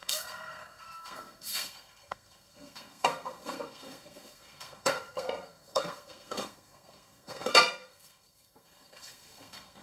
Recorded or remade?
remade